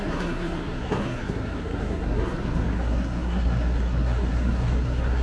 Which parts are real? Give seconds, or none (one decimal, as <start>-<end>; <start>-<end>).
none